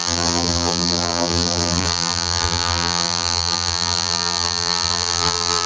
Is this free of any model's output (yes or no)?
no